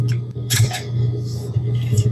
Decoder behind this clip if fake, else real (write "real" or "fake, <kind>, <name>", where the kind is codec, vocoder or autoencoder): fake, codec, DAC